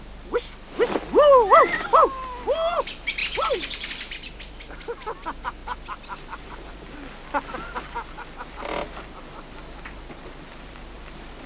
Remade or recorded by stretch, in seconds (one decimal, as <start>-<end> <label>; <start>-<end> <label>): 0.0-3.2 recorded; 3.2-3.9 remade; 3.9-11.5 recorded